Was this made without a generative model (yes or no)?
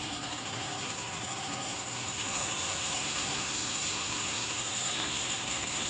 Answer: no